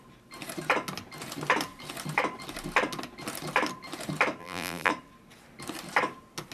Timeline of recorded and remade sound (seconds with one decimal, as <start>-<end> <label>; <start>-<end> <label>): 0.0-4.4 recorded; 4.4-4.9 remade; 4.9-6.5 recorded